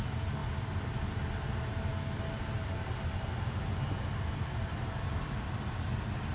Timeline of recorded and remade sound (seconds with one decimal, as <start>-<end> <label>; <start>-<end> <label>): 0.0-6.3 recorded